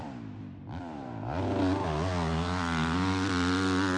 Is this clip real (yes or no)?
yes